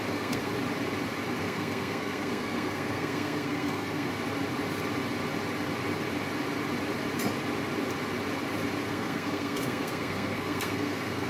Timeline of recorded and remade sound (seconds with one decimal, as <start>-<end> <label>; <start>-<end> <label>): 0.0-0.5 remade; 0.5-1.4 recorded; 1.4-4.1 remade; 4.1-8.9 recorded; 8.9-11.3 remade